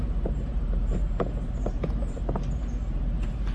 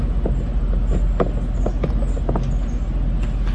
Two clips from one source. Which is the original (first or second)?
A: second